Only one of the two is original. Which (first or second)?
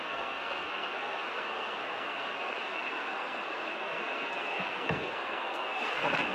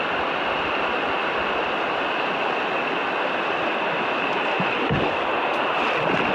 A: second